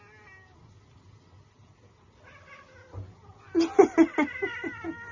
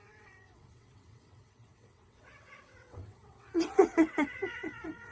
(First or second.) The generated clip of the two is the second